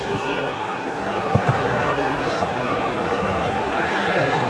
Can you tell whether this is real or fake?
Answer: fake